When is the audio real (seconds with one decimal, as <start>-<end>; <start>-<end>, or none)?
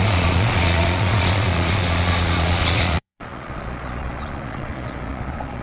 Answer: none